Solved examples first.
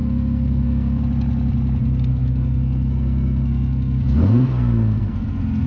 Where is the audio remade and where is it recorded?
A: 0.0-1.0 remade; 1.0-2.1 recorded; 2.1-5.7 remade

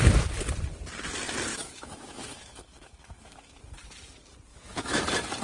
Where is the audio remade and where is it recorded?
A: 0.0-1.5 recorded; 1.5-3.6 remade; 3.6-4.5 recorded; 4.5-5.0 remade; 5.0-5.4 recorded